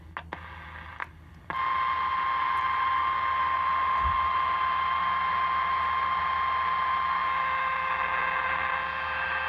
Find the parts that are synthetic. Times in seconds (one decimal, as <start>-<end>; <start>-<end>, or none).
none